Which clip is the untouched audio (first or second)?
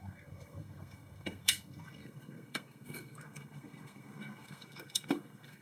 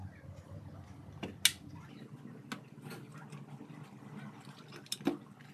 second